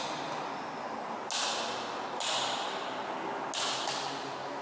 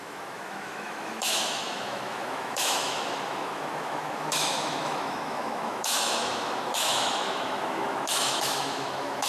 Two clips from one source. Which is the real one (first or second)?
first